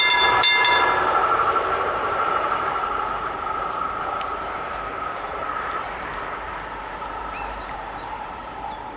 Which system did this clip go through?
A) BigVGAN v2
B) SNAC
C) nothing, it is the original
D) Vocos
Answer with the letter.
A